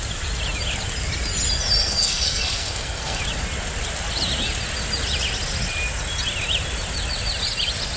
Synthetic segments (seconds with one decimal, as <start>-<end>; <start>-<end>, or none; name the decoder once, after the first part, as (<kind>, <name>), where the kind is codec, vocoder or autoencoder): 1.8-3.2 (codec, SNAC)